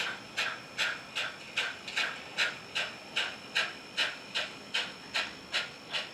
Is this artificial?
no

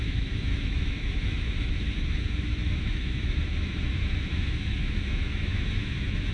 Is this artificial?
yes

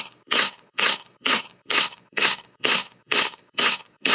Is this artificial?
yes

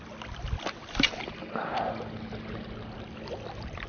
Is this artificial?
no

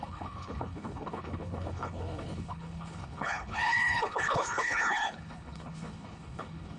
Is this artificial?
yes